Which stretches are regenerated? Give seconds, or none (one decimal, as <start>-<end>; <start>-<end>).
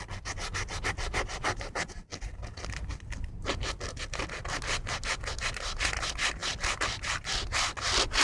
none